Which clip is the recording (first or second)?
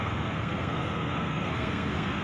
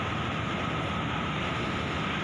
second